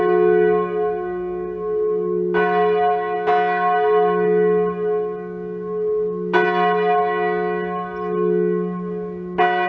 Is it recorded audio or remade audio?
recorded